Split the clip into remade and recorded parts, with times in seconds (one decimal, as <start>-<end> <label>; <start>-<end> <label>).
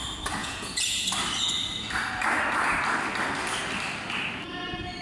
0.0-0.4 recorded; 0.4-1.0 remade; 1.0-5.0 recorded